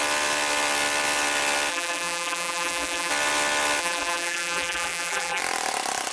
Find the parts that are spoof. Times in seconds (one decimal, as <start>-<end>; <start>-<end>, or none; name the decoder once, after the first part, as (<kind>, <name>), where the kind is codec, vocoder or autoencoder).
1.7-3.1 (vocoder, BigVGAN v2); 3.8-5.4